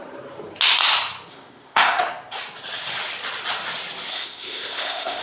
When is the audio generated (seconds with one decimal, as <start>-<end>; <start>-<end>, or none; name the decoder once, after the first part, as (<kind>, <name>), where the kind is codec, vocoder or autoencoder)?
1.3-2.0 (codec, ZipCodec); 4.1-5.2